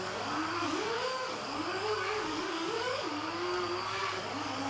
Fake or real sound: fake